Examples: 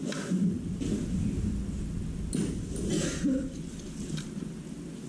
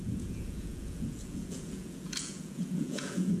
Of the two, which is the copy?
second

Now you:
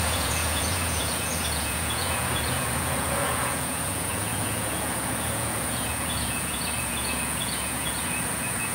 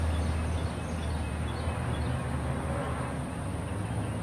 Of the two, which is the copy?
first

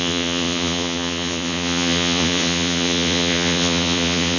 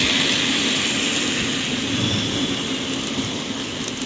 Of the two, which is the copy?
first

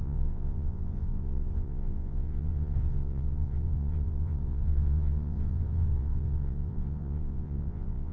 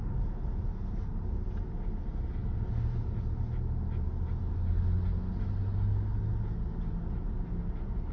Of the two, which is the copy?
first